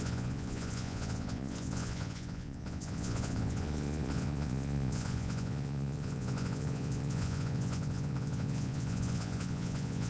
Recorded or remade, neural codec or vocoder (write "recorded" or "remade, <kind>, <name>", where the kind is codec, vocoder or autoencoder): remade, vocoder, Vocos